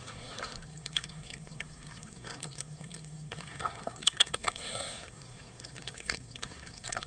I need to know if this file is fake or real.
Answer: fake